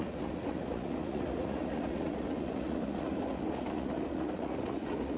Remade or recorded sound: remade